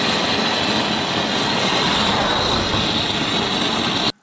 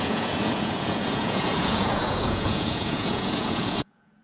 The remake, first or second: second